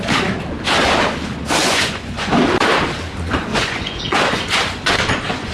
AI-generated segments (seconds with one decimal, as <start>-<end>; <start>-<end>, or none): 1.6-2.3; 3.5-5.5